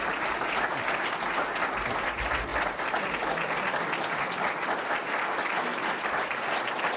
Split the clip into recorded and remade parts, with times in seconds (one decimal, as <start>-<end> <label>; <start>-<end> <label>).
0.0-5.7 recorded; 5.7-6.5 remade; 6.5-7.0 recorded